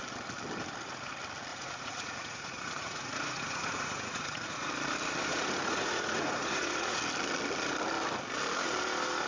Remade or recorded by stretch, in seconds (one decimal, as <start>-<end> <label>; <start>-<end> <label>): 0.0-1.5 recorded; 1.5-4.7 remade; 4.7-5.3 recorded; 5.3-7.0 remade; 7.0-9.3 recorded